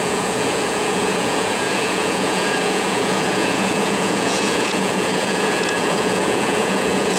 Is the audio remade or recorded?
remade